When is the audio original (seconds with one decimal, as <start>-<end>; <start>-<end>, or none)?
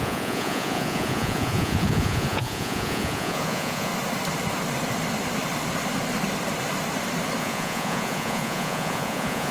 3.9-7.4